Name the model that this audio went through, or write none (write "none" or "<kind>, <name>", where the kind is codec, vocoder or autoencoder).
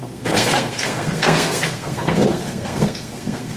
codec, SNAC